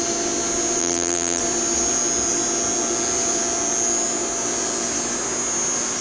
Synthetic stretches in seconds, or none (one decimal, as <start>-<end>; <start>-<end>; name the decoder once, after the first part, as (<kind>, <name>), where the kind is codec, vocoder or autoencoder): 0.8-1.4 (vocoder, BigVGAN v2)